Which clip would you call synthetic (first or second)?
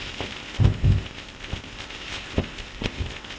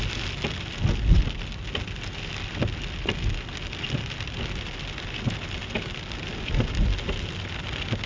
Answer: first